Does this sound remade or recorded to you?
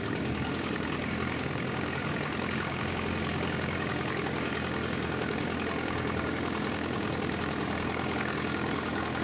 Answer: remade